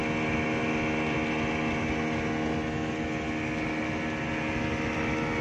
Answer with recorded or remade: recorded